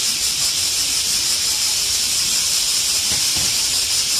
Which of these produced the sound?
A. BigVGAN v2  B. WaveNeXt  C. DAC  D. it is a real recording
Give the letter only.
D